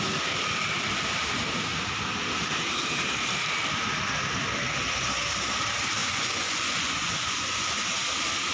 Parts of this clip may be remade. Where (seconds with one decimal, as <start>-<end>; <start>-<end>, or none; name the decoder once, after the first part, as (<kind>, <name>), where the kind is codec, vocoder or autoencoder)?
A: 6.0-7.8 (vocoder, Vocos)